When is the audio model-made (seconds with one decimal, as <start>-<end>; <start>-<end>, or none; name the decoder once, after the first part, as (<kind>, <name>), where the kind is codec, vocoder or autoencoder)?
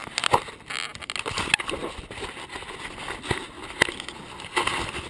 none